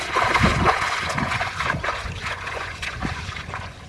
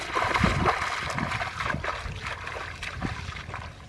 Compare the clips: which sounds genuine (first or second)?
second